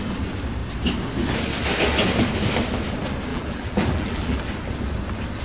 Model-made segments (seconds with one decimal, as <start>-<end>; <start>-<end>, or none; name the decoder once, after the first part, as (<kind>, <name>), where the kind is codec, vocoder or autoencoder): 3.3-4.4 (vocoder, BigVGAN v2)